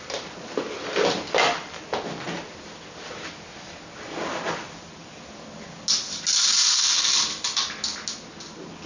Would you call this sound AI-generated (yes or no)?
no